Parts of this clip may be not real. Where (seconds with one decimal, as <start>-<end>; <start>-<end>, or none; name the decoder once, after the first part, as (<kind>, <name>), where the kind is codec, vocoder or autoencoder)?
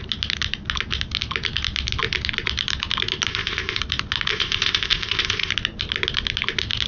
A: 3.3-3.8 (codec, ZipCodec); 4.3-5.5